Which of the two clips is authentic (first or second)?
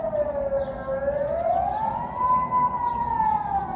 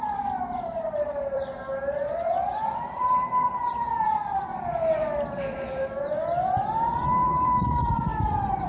first